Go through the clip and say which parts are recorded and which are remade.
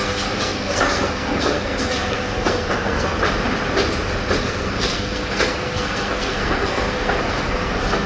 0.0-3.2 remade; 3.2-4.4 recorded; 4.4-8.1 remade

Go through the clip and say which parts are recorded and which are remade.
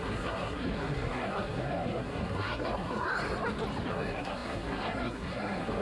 0.0-3.1 remade; 3.1-3.9 recorded; 3.9-5.8 remade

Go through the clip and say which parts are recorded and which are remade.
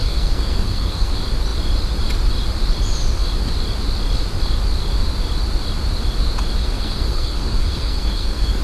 0.0-1.1 remade; 1.1-6.6 recorded; 6.6-8.6 remade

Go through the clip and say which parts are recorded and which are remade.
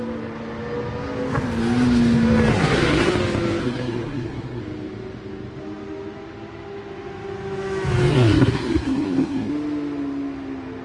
0.0-2.5 recorded; 2.5-3.1 remade; 3.1-3.6 recorded; 3.6-4.6 remade; 4.6-8.1 recorded; 8.1-9.5 remade; 9.5-10.8 recorded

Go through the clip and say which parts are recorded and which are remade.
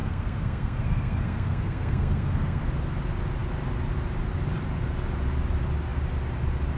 0.0-2.6 remade; 2.6-6.8 recorded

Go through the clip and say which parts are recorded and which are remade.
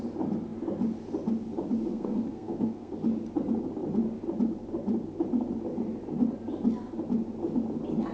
0.0-1.9 recorded; 1.9-2.9 remade; 2.9-8.1 recorded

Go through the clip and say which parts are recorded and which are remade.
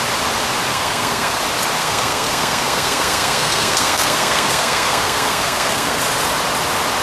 0.0-0.7 recorded; 0.7-1.4 remade; 1.4-1.8 recorded; 1.8-6.0 remade; 6.0-7.0 recorded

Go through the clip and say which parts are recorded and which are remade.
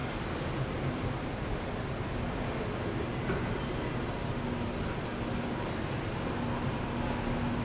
0.0-7.6 recorded